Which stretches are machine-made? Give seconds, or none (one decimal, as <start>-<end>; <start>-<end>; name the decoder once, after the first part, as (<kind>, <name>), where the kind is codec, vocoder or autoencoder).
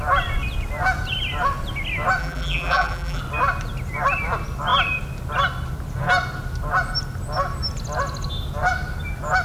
2.2-3.2 (vocoder, BigVGAN v2)